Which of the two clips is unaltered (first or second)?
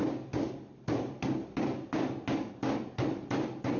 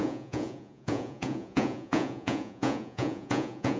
first